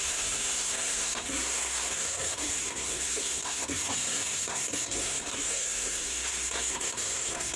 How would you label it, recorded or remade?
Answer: remade